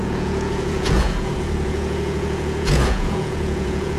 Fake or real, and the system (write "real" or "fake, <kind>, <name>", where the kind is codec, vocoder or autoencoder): fake, vocoder, Vocos